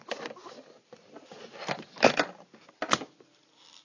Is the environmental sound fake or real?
fake